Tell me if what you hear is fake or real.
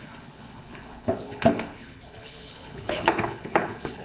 fake